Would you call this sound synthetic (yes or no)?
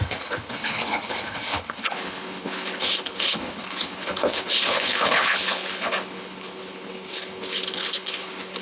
yes